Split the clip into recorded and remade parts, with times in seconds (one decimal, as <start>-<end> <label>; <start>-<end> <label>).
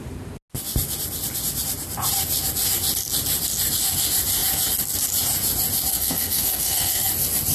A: 0.0-5.9 recorded; 5.9-7.1 remade; 7.1-7.5 recorded